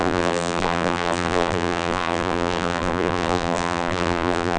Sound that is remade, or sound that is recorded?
remade